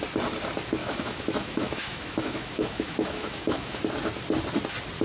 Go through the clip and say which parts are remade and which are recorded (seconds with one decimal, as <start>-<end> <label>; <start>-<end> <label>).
0.0-0.8 recorded; 0.8-3.8 remade; 3.8-5.0 recorded